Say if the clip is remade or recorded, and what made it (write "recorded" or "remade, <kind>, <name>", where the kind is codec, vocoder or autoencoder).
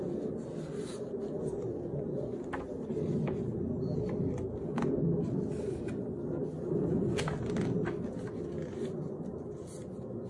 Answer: recorded